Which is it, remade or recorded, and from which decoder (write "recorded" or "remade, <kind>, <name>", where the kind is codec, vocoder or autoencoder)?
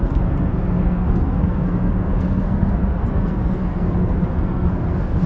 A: remade, codec, SNAC